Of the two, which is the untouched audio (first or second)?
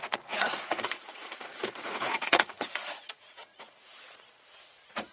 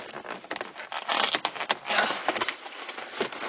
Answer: second